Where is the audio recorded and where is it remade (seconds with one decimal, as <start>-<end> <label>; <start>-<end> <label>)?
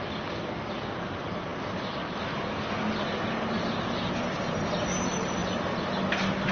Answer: 0.0-6.5 recorded